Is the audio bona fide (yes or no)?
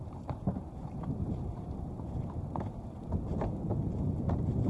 no